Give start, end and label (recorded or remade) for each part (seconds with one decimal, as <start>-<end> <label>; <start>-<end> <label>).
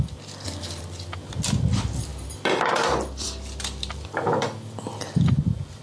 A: 0.0-5.8 recorded